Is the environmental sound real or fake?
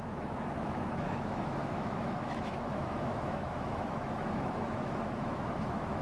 fake